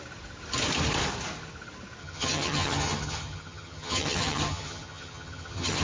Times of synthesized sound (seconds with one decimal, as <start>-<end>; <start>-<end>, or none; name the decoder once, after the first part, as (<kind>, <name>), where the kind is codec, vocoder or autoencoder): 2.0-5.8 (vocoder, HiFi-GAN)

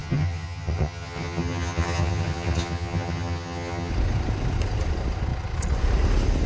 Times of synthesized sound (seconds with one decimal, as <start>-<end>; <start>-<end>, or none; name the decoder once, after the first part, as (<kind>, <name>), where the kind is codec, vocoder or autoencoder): 0.0-3.9 (vocoder, HiFi-GAN)

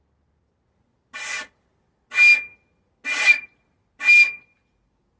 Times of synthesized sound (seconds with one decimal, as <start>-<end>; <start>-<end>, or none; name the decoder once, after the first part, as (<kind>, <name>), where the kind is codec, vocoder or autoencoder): none